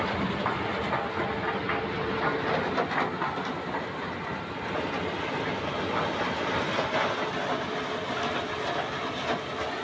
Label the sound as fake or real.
real